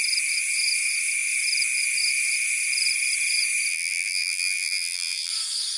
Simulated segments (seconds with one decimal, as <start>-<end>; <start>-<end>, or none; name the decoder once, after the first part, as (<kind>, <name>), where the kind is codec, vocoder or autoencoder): 3.7-5.3 (vocoder, BigVGAN v2)